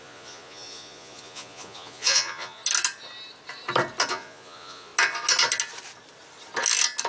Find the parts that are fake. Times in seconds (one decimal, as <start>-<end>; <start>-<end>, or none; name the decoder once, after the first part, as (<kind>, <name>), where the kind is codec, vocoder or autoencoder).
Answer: 0.0-2.6 (vocoder, Vocos); 4.1-4.9